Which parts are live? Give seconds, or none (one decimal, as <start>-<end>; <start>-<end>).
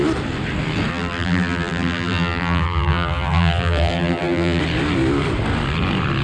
0.0-0.9; 4.6-6.2